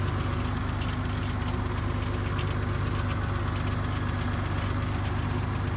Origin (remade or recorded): recorded